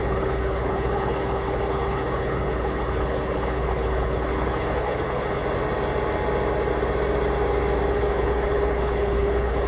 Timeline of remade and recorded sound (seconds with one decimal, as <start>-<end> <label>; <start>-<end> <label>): 0.0-5.4 remade; 5.4-7.9 recorded; 7.9-9.7 remade